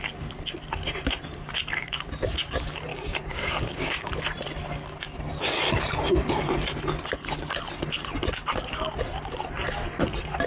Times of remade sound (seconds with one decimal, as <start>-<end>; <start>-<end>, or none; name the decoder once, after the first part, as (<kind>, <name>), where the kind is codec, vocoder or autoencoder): 2.9-4.1 (codec, DAC)